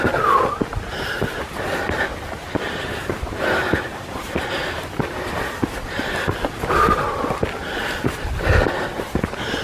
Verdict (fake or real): real